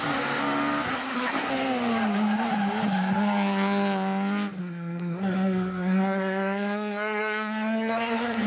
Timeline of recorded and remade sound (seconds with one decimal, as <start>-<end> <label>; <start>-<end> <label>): 0.0-0.9 recorded; 0.9-1.5 remade; 1.5-4.6 recorded; 4.6-8.5 remade